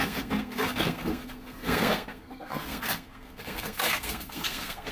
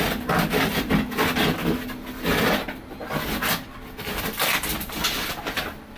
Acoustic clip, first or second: second